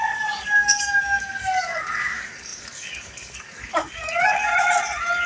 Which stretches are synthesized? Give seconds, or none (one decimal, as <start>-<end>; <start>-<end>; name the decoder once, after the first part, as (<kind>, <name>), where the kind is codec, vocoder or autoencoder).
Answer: 0.0-4.5 (codec, DAC)